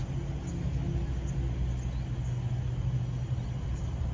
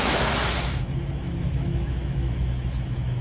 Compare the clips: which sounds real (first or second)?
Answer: first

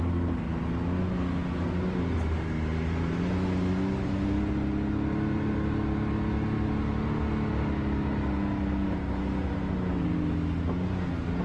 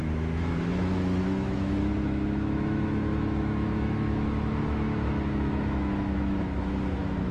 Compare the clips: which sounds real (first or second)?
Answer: first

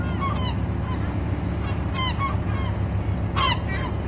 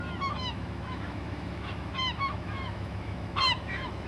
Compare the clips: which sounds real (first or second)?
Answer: first